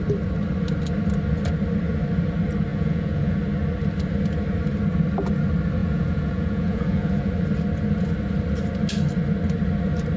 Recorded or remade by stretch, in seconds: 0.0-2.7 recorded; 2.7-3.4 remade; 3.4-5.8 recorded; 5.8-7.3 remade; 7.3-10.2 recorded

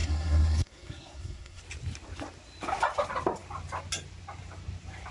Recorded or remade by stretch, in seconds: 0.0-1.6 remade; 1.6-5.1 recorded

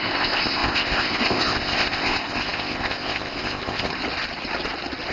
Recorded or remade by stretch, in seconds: 0.0-3.9 remade; 3.9-5.1 recorded